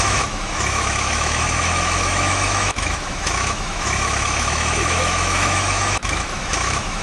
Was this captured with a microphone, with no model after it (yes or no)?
no